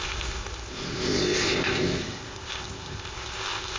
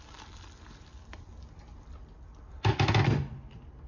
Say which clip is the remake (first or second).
first